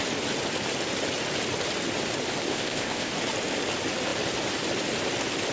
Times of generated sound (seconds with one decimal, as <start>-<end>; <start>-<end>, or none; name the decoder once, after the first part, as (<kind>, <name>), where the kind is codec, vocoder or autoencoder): 2.5-3.1 (codec, ZipCodec)